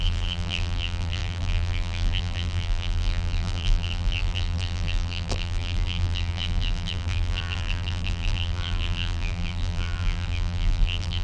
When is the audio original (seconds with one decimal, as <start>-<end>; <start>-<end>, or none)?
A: none